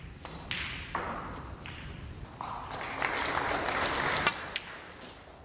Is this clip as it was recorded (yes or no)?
yes